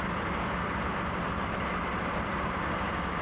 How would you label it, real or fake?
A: real